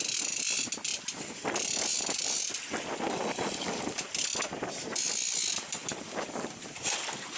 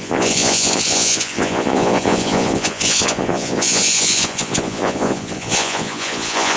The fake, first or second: second